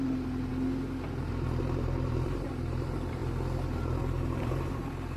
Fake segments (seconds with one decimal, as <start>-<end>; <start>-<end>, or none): 0.0-0.5; 1.6-3.2; 4.0-5.2